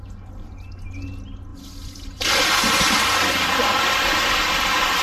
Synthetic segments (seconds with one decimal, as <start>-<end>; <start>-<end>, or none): 1.5-4.5